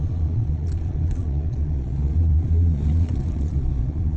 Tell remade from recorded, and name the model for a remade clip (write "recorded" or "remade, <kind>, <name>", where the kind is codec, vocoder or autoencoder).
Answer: remade, vocoder, Vocos